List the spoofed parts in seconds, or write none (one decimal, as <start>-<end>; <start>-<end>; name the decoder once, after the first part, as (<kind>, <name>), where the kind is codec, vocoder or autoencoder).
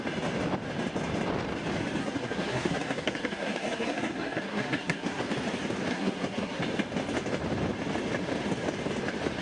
2.0-5.2 (codec, SNAC); 5.9-6.6